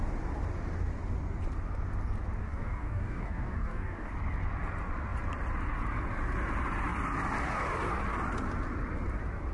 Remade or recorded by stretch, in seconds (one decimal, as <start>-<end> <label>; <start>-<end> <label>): 0.0-2.4 recorded; 2.4-4.1 remade; 4.1-9.5 recorded